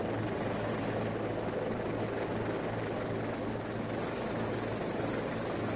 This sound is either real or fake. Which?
real